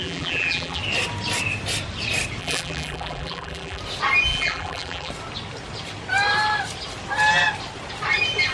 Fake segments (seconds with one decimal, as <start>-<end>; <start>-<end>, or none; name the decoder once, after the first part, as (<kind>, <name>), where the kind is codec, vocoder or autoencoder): 0.0-0.8 (vocoder, BigVGAN v2); 2.4-3.8; 4.3-5.1